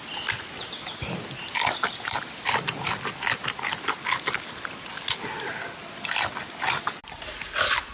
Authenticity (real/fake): real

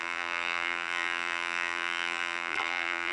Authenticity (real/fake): fake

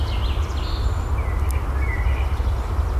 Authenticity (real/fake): real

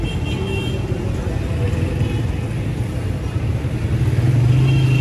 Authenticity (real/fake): real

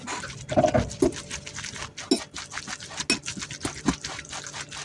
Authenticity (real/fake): real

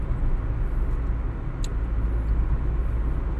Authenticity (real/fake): real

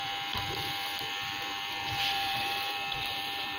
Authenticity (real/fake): fake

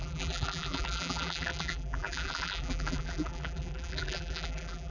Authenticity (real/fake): fake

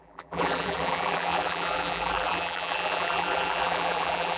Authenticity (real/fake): fake